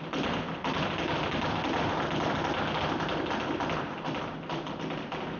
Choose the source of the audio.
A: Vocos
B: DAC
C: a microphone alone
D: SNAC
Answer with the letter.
C